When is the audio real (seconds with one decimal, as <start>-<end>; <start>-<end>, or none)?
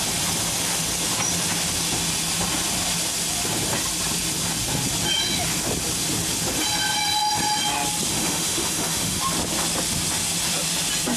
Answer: 0.0-8.1; 9.2-11.2